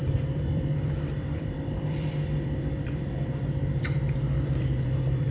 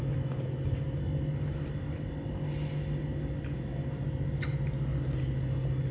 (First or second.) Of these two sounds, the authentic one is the second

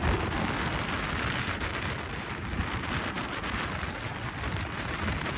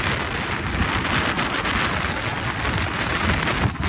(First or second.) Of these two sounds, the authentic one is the second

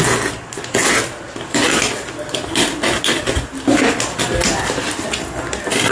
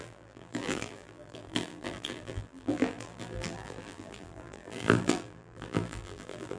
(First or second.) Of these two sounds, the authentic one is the first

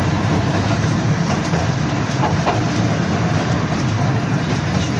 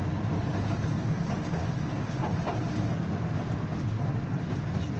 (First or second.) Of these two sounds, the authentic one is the second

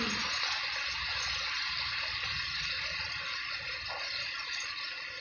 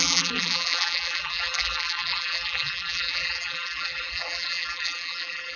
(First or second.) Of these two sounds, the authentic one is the first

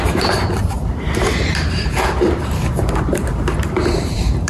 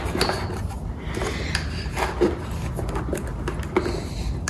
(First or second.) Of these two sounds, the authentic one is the second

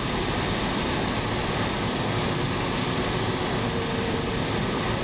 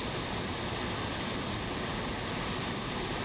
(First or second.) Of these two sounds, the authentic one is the first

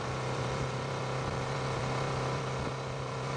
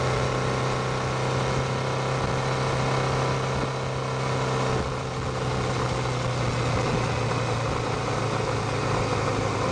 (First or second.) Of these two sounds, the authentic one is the second